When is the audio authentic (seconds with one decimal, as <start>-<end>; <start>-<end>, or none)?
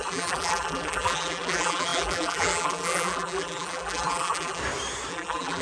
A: 4.6-5.1